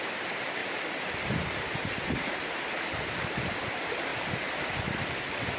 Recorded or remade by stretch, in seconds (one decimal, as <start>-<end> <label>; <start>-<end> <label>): 0.0-0.6 recorded; 0.6-3.4 remade; 3.4-5.6 recorded